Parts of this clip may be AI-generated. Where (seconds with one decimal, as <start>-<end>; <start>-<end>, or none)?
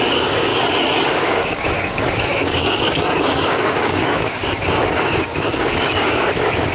0.0-0.5; 1.1-6.7